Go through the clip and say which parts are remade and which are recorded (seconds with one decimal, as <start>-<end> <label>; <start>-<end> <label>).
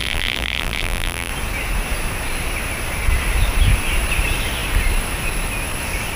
0.0-1.3 remade; 1.3-6.2 recorded